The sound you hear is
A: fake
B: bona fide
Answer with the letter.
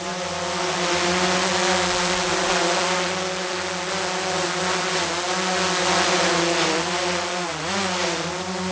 B